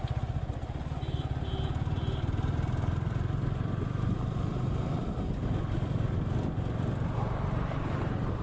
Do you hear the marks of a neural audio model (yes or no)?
no